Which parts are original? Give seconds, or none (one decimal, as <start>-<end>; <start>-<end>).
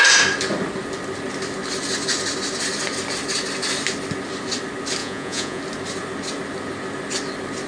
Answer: 0.0-5.0; 5.6-7.7